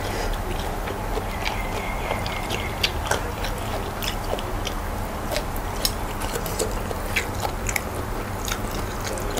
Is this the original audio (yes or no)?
yes